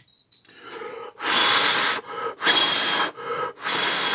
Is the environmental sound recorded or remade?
recorded